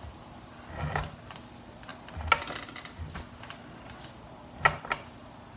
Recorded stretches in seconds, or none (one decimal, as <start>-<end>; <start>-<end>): 0.0-5.6